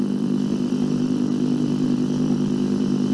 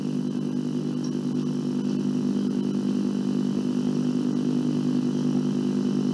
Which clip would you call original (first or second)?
second